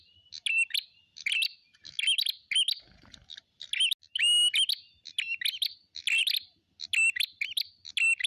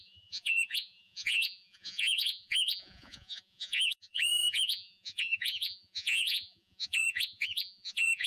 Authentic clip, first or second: first